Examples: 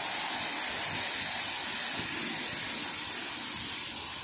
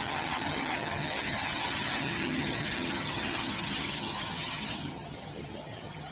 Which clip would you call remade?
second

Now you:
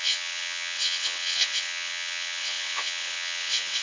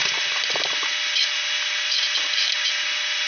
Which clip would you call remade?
first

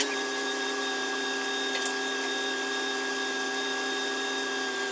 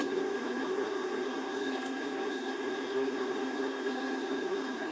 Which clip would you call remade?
second